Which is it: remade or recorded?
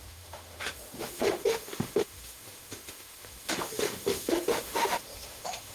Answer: remade